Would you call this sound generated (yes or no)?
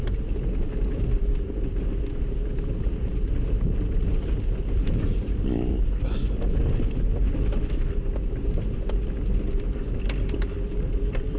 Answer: no